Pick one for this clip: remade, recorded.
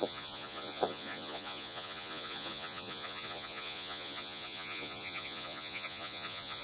remade